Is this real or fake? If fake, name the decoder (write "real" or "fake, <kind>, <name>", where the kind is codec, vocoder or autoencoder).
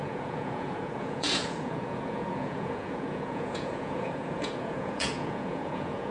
fake, vocoder, Vocos